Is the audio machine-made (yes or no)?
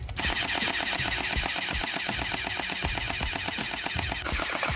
no